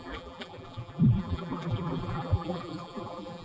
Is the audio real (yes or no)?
no